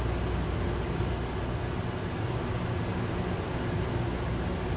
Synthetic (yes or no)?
no